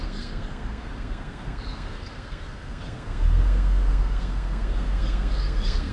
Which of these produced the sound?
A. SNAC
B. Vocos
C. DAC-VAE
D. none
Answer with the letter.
A